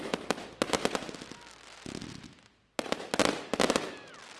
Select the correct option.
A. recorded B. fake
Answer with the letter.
A